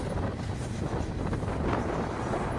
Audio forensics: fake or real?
real